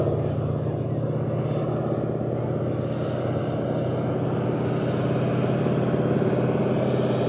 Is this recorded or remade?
recorded